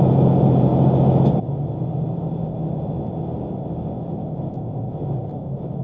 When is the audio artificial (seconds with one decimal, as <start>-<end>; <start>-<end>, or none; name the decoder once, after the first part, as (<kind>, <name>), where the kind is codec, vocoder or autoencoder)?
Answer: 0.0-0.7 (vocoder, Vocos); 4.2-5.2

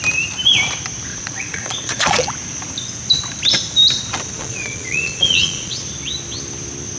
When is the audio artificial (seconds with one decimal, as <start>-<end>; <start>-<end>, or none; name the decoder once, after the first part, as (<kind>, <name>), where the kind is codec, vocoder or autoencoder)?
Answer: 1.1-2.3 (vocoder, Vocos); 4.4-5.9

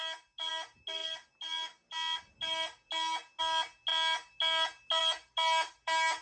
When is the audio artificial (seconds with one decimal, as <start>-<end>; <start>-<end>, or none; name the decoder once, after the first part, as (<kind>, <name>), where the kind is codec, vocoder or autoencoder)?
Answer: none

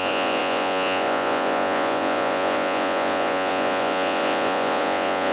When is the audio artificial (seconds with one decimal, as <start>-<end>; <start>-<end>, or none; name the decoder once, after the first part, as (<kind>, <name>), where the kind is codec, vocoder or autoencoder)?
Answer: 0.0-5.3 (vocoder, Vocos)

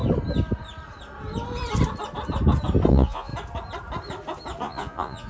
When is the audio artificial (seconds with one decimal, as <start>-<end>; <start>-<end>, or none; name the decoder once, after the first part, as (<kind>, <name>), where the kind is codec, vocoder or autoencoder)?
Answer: 2.9-3.3 (vocoder, Vocos); 4.6-5.3

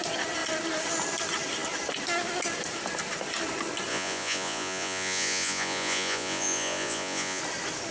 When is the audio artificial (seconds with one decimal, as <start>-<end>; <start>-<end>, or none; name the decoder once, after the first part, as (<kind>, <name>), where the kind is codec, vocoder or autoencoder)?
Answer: 3.9-7.4 (vocoder, Vocos)